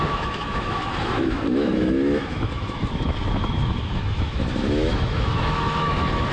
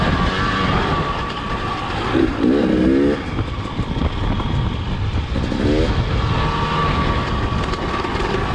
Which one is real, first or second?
second